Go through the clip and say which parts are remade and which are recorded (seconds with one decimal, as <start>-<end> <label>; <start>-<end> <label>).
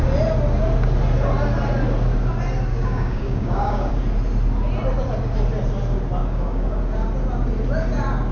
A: 0.0-2.7 recorded; 2.7-3.9 remade; 3.9-6.2 recorded; 6.2-6.8 remade; 6.8-8.3 recorded